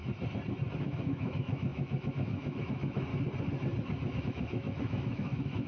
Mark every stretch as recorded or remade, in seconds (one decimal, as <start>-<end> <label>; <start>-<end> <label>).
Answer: 0.0-0.8 recorded; 0.8-3.1 remade; 3.1-4.2 recorded; 4.2-5.7 remade